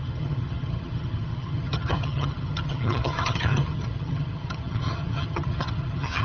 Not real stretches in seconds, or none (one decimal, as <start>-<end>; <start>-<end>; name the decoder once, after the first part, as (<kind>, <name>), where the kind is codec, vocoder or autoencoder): 0.0-6.2 (vocoder, HiFi-GAN)